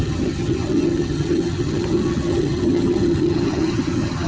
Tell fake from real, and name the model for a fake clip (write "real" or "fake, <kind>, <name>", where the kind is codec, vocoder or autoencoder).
fake, vocoder, HiFi-GAN